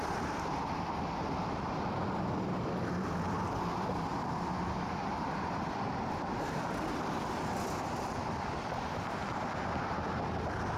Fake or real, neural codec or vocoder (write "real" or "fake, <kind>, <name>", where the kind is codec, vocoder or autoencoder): fake, vocoder, BigVGAN v2